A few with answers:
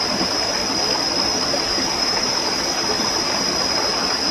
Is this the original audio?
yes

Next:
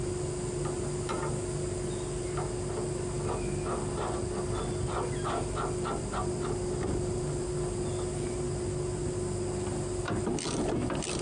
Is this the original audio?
yes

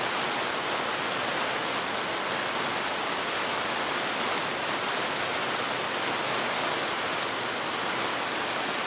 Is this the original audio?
yes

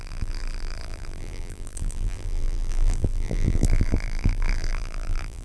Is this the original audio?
no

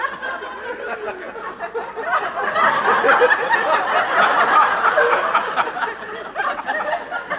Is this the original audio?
yes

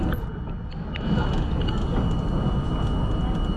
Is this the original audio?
yes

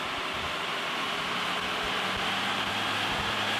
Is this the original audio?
yes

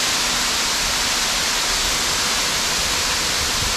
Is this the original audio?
yes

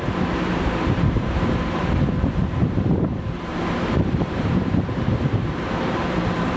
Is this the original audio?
no